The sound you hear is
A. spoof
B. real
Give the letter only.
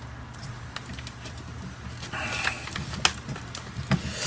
B